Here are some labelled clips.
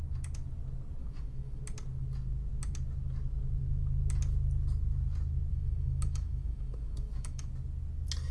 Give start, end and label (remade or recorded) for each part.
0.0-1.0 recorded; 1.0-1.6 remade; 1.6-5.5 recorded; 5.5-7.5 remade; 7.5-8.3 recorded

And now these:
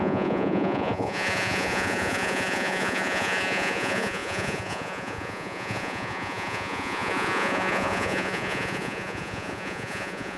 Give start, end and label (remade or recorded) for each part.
0.0-10.4 remade

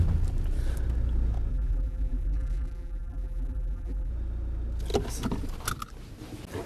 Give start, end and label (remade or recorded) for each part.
0.0-1.5 recorded; 1.5-4.1 remade; 4.1-6.7 recorded

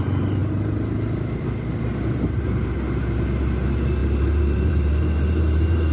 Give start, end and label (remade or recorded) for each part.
0.0-5.9 recorded

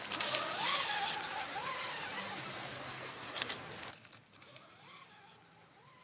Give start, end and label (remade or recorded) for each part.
0.0-2.9 recorded; 2.9-3.5 remade; 3.5-6.0 recorded

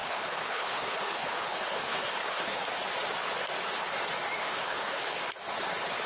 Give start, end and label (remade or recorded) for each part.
0.0-2.6 remade; 2.6-4.4 recorded; 4.4-5.2 remade; 5.2-6.1 recorded